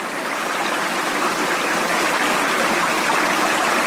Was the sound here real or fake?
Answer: real